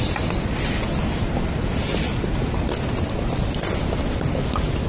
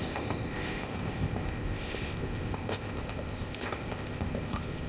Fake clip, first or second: second